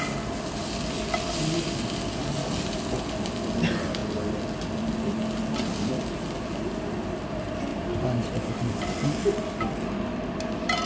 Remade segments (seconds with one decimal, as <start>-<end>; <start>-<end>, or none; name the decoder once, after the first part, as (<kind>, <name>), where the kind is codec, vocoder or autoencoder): 7.7-8.5 (vocoder, BigVGAN v2)